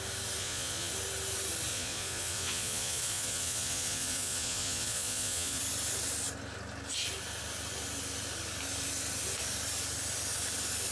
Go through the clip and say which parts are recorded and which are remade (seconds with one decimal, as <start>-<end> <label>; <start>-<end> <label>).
0.0-0.4 recorded; 0.4-0.9 remade; 0.9-1.7 recorded; 1.7-5.6 remade; 5.6-10.9 recorded